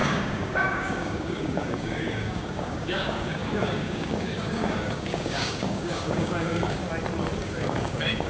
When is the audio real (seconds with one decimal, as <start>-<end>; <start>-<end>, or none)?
6.8-7.4